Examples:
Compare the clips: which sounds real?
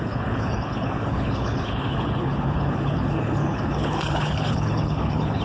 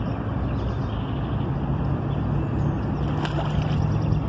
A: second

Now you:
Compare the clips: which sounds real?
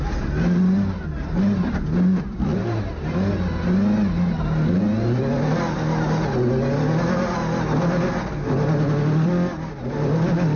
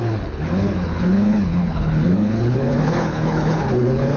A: first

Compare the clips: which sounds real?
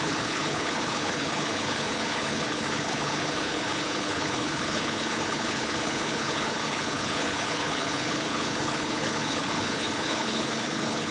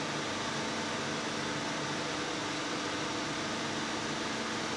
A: second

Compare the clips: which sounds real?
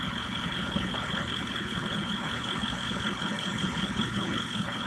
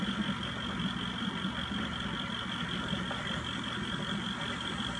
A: second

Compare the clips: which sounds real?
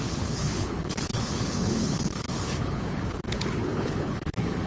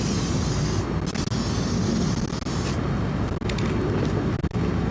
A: second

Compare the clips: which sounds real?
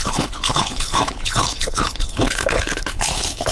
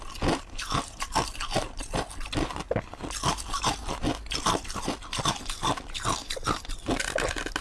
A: second